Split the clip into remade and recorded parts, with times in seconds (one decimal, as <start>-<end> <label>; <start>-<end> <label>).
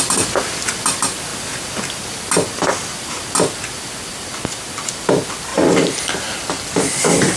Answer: 0.0-7.4 recorded